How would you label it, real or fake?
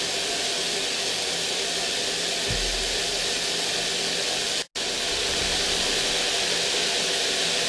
real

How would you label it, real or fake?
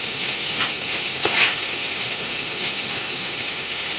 fake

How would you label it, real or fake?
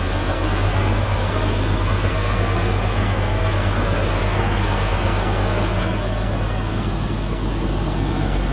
fake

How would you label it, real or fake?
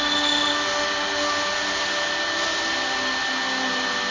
real